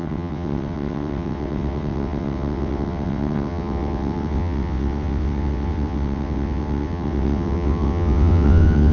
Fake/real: fake